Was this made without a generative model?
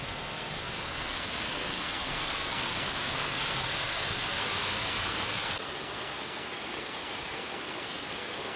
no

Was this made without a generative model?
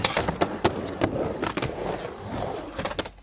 yes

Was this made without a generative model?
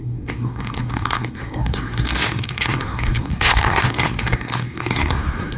no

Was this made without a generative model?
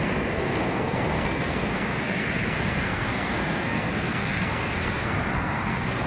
no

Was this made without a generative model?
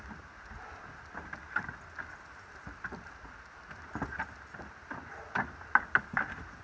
yes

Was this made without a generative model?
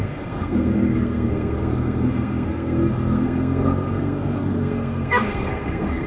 no